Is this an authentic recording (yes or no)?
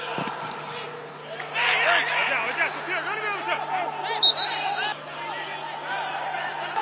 yes